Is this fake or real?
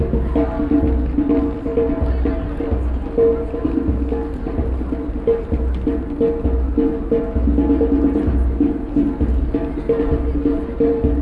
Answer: real